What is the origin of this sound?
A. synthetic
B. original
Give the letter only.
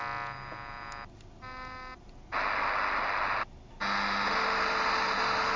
B